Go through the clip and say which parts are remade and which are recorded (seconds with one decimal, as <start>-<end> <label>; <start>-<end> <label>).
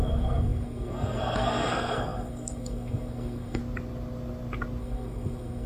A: 0.0-3.6 remade; 3.6-4.8 recorded; 4.8-5.7 remade